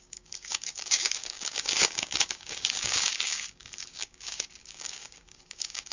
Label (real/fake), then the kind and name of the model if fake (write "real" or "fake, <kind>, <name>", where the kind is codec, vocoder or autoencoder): fake, codec, DAC